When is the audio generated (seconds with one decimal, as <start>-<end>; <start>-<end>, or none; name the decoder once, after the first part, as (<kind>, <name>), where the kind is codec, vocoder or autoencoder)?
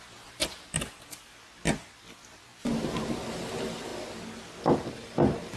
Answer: none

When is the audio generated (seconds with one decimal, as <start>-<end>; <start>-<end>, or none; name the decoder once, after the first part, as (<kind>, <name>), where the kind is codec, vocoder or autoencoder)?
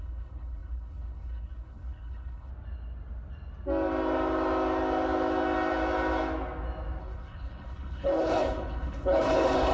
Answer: 0.0-2.5 (codec, HILCodec); 7.0-9.7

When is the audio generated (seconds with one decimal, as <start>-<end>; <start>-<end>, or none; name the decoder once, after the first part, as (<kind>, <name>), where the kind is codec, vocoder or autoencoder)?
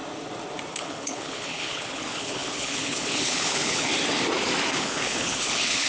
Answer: 0.7-3.9 (codec, HILCodec); 4.7-5.9